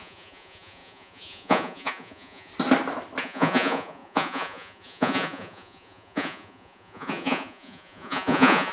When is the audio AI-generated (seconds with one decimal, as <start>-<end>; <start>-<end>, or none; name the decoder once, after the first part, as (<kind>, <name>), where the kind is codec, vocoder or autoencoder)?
0.0-2.5 (vocoder, Vocos); 3.2-8.7